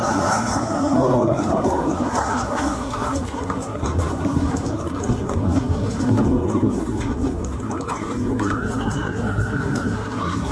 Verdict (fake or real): fake